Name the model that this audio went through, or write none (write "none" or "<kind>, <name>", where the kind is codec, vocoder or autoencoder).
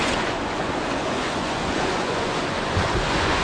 vocoder, Vocos